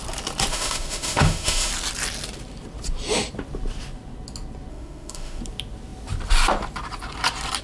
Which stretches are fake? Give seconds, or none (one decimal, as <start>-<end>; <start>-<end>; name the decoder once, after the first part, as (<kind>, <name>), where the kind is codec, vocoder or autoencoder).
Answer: 0.5-1.7 (autoencoder, DAC-VAE); 4.7-5.4